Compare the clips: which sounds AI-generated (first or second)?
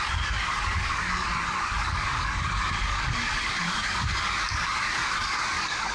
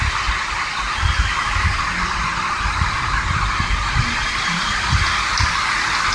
first